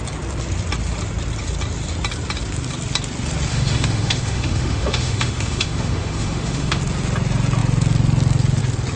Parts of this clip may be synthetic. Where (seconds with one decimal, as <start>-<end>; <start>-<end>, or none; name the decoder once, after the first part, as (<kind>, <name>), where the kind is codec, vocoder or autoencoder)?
3.5-6.8 (autoencoder, DAC-VAE)